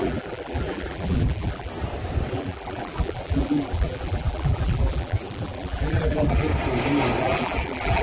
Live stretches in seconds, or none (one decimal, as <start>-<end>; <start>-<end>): 1.7-2.3; 6.5-7.2